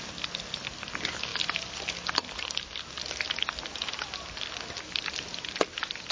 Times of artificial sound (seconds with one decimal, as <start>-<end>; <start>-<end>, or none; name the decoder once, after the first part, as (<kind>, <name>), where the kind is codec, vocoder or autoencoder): 1.3-2.6 (vocoder, BigVGAN v2)